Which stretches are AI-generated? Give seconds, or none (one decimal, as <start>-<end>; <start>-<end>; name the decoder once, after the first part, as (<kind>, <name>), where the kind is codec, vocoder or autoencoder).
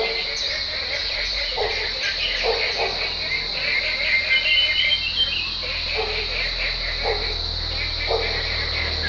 1.0-1.7 (vocoder, Vocos)